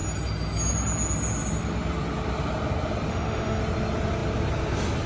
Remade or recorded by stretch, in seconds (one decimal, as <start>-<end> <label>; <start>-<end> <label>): 0.0-3.1 recorded; 3.1-3.6 remade; 3.6-5.1 recorded